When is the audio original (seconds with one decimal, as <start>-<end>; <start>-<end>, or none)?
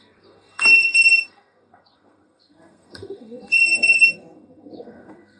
none